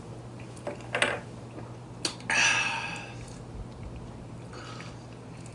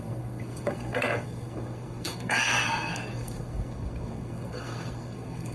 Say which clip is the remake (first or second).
second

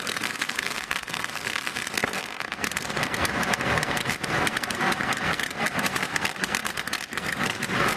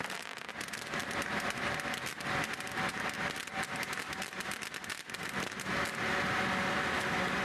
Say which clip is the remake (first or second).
first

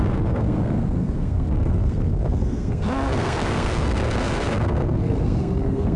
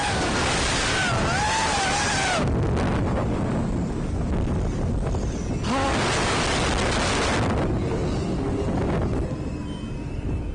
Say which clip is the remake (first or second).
first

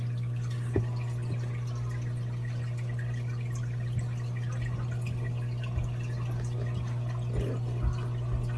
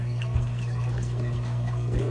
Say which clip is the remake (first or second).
second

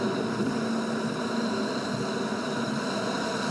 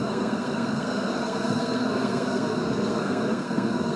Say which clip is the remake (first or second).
second